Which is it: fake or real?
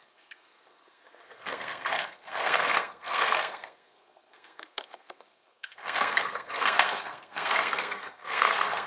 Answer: fake